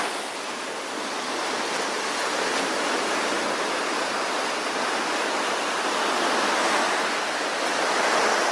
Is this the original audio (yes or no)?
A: yes